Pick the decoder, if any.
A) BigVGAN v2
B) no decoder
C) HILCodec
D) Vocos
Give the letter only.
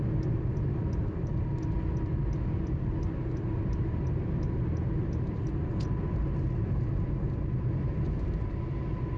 B